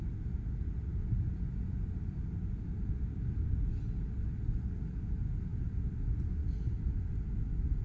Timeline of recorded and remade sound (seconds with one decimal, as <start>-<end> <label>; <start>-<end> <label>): 0.0-7.8 recorded